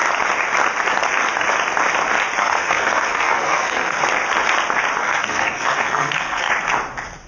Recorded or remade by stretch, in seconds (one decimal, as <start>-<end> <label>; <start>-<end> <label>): 0.0-2.4 recorded; 2.4-4.0 remade; 4.0-5.0 recorded; 5.0-6.5 remade; 6.5-7.3 recorded